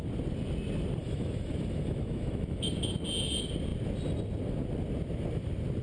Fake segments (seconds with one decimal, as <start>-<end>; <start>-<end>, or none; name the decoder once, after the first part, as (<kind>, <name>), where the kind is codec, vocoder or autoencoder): 1.0-2.7 (autoencoder, DAC-VAE)